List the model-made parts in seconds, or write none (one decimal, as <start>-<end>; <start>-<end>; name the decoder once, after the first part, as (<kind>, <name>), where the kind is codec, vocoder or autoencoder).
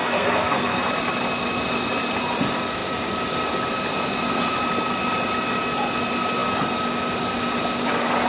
0.0-0.8 (codec, SNAC)